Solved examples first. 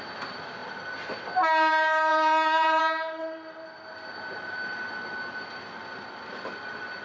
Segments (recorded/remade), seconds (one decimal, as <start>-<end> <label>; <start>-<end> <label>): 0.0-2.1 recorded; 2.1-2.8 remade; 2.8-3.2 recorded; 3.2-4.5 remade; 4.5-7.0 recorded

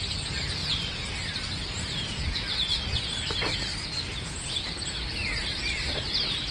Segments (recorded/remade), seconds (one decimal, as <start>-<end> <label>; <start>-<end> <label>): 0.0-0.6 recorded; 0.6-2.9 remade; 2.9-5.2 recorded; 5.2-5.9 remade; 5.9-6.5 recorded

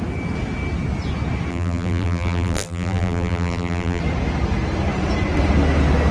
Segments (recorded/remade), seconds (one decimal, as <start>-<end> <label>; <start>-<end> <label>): 0.0-1.5 recorded; 1.5-4.0 remade; 4.0-6.1 recorded

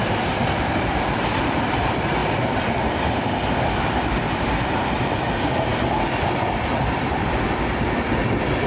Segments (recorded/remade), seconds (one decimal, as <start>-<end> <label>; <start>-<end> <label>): 0.0-0.8 recorded; 0.8-2.2 remade; 2.2-4.4 recorded; 4.4-8.7 remade

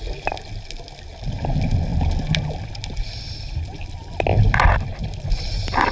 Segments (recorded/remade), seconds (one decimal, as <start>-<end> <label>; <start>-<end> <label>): 0.0-5.9 recorded

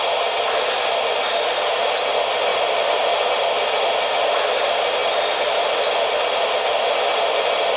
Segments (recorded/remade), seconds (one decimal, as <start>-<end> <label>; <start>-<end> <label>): 0.0-2.5 recorded; 2.5-3.2 remade; 3.2-7.8 recorded

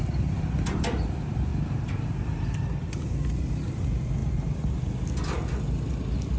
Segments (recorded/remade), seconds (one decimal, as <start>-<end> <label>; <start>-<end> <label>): 0.0-1.5 recorded; 1.5-2.8 remade; 2.8-6.4 recorded

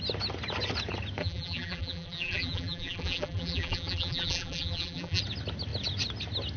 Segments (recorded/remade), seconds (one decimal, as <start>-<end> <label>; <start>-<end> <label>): 0.0-1.2 recorded; 1.2-5.2 remade; 5.2-6.6 recorded